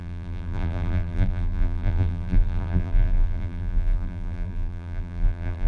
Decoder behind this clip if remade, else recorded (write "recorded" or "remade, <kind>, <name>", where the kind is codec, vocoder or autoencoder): remade, vocoder, BigVGAN v2